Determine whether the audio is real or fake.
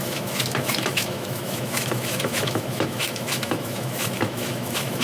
fake